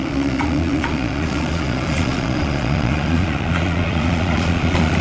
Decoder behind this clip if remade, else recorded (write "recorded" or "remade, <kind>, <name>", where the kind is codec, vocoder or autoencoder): remade, vocoder, Vocos